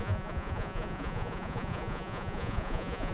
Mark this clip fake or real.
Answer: fake